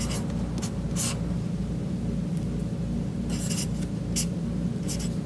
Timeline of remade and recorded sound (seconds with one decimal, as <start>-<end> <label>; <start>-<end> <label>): 0.0-5.3 recorded